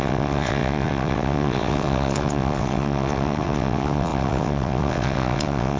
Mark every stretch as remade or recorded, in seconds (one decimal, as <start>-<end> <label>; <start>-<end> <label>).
0.0-5.8 remade